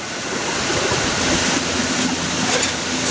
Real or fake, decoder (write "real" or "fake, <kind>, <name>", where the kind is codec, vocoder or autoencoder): real